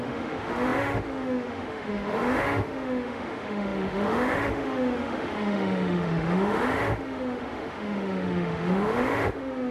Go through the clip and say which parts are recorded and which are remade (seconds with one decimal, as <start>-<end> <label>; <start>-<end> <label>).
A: 0.0-9.7 remade